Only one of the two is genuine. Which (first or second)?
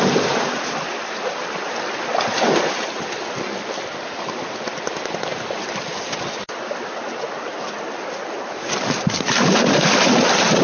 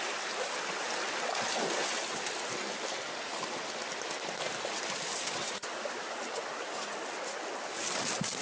second